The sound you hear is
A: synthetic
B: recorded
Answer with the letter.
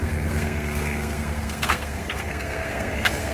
A